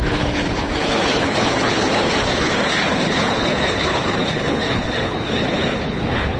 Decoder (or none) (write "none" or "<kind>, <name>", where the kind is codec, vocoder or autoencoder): codec, HILCodec